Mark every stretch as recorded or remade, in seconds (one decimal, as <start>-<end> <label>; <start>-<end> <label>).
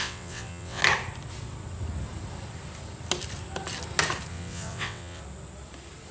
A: 0.0-0.8 remade; 0.8-4.3 recorded; 4.3-5.2 remade; 5.2-6.1 recorded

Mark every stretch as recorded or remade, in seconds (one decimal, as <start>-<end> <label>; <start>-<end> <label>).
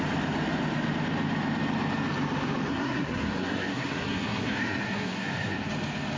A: 0.0-2.7 recorded; 2.7-5.7 remade; 5.7-6.2 recorded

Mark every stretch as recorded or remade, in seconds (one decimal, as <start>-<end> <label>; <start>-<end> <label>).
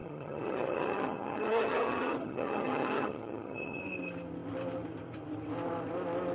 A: 0.0-3.8 remade; 3.8-6.3 recorded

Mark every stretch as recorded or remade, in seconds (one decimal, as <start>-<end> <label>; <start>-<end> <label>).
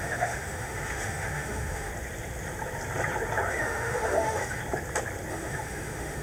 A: 0.0-1.9 remade; 1.9-3.5 recorded; 3.5-4.6 remade; 4.6-5.3 recorded; 5.3-6.2 remade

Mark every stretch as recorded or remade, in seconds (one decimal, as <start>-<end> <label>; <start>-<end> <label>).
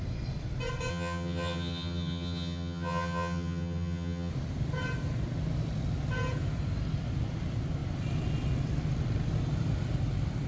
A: 0.0-0.9 recorded; 0.9-4.3 remade; 4.3-10.5 recorded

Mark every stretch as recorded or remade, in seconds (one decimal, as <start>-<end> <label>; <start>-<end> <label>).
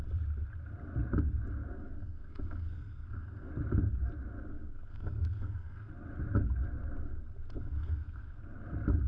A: 0.0-2.0 recorded; 2.0-3.5 remade; 3.5-4.9 recorded; 4.9-5.9 remade; 5.9-7.6 recorded; 7.6-8.4 remade; 8.4-9.1 recorded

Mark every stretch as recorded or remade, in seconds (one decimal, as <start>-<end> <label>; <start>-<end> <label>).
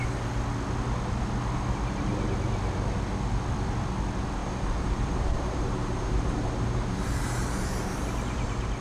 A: 0.0-4.4 recorded; 4.4-8.0 remade; 8.0-8.8 recorded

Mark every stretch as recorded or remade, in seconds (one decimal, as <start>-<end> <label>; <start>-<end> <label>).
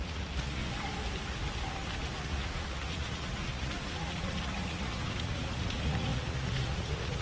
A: 0.0-0.6 remade; 0.6-2.2 recorded; 2.2-7.2 remade